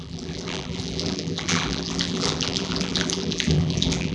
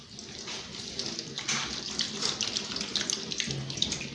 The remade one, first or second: first